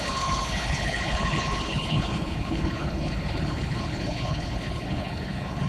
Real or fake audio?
fake